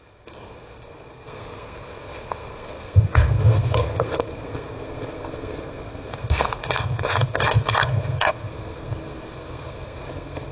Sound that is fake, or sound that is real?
fake